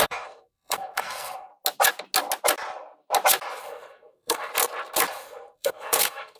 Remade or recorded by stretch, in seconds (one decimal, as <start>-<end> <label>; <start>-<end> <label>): 0.0-1.5 remade; 1.5-3.6 recorded; 3.6-4.5 remade; 4.5-5.1 recorded; 5.1-6.4 remade